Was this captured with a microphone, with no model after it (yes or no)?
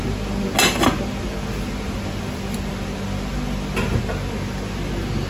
yes